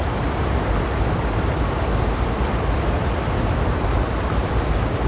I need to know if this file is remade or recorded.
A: recorded